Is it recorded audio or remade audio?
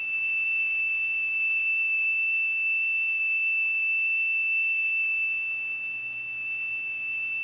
recorded